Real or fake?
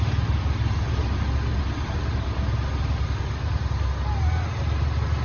real